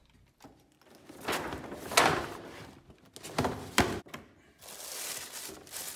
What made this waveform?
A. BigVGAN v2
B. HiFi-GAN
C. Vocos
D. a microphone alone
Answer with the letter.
D